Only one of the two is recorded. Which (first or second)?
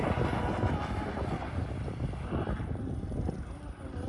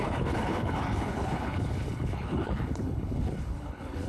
first